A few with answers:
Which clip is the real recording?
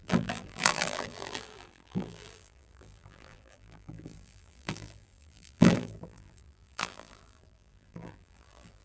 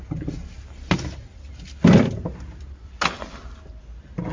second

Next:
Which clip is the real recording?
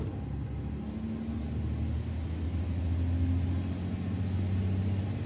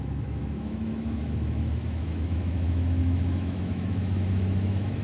first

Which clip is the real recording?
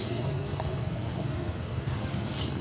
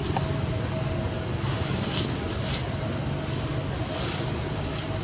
second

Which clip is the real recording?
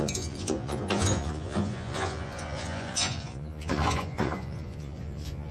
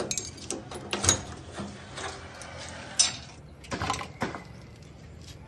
second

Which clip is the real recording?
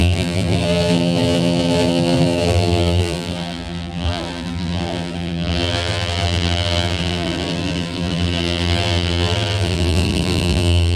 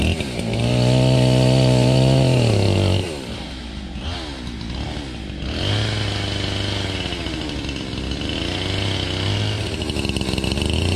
second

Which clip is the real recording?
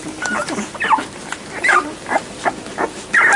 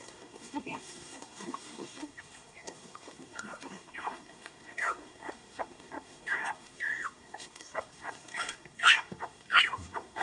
first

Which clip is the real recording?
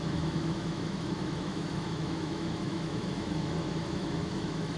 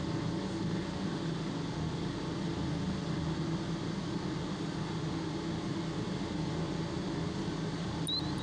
second